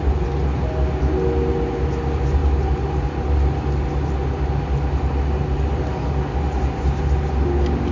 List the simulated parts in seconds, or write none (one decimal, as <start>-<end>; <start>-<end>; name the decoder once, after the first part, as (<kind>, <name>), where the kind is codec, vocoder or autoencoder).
none